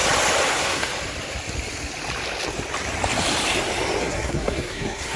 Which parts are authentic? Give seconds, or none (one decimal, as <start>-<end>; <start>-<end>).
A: 0.0-0.5; 0.9-4.0

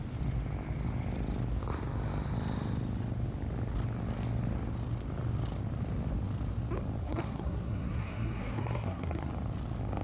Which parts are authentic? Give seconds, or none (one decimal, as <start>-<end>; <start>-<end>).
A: 0.0-7.0; 9.3-10.0

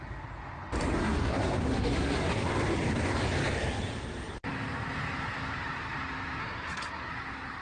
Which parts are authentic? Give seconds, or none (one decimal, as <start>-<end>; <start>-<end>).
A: 0.0-1.0; 2.5-6.4; 7.1-7.6

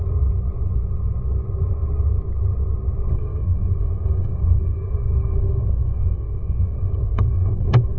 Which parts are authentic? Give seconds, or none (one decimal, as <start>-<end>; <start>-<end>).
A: 0.0-3.1

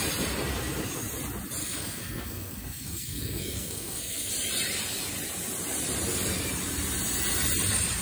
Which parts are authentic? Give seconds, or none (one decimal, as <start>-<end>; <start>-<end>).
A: 0.0-1.6; 4.3-8.0

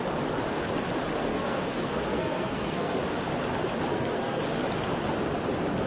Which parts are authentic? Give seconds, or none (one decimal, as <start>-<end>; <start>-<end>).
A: 0.0-1.2; 3.0-3.9; 4.4-5.9